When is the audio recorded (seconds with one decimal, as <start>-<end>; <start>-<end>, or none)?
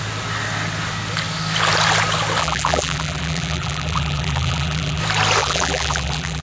0.0-2.4; 5.0-5.4